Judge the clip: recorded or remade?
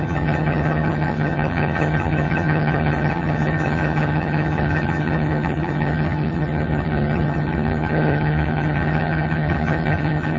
remade